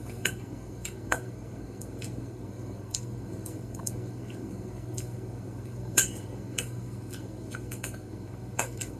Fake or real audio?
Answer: fake